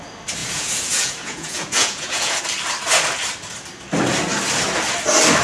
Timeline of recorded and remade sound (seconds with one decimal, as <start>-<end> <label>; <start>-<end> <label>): 0.0-0.4 recorded; 0.4-2.4 remade; 2.4-5.4 recorded